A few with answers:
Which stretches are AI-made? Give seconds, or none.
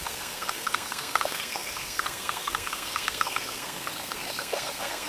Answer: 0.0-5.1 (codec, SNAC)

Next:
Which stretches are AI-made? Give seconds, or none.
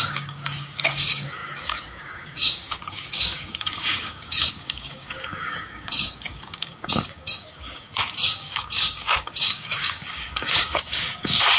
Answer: 0.0-11.6 (codec, DAC)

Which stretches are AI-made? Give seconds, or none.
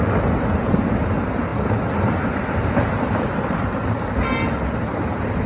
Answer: none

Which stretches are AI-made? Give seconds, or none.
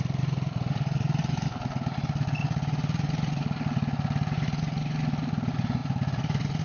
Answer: 0.0-1.2 (vocoder, BigVGAN v2); 5.2-6.6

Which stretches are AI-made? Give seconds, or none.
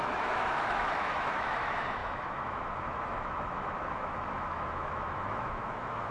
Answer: 0.0-6.1 (autoencoder, DAC-VAE)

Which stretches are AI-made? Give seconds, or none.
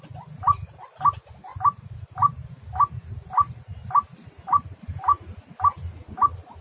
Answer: none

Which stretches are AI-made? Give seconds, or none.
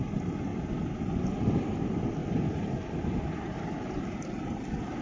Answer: 0.0-0.5 (vocoder, BigVGAN v2); 1.0-2.2; 3.0-5.0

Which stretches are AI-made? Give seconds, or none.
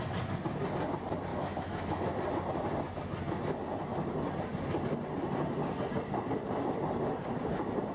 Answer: 1.3-2.1 (autoencoder, DAC-VAE)